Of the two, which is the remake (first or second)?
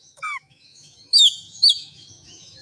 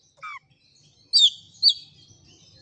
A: first